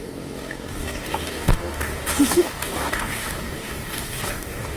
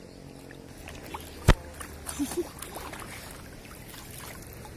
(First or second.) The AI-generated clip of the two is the first